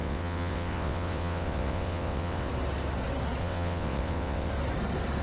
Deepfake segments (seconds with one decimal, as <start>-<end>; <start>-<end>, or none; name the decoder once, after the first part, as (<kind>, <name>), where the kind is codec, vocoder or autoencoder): 0.0-2.5 (vocoder, WaveNeXt); 3.4-4.5